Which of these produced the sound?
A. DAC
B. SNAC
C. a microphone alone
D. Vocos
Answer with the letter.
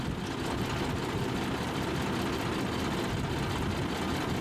C